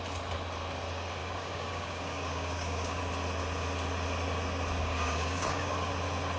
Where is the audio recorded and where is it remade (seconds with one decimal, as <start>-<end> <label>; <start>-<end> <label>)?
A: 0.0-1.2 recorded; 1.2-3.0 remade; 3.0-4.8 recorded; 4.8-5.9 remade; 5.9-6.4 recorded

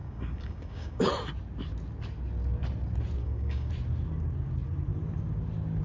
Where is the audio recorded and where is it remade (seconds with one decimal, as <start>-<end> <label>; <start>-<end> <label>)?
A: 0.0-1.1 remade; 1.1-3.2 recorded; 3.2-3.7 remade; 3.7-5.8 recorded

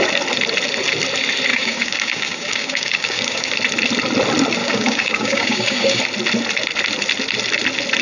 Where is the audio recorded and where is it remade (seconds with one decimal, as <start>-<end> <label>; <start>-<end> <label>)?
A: 0.0-1.5 recorded; 1.5-3.5 remade; 3.5-4.6 recorded; 4.6-6.0 remade; 6.0-8.0 recorded

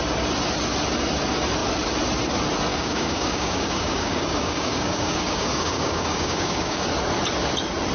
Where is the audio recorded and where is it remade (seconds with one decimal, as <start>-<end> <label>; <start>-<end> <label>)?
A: 0.0-2.7 recorded; 2.7-6.9 remade; 6.9-7.9 recorded